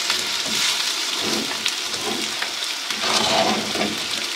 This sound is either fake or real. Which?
real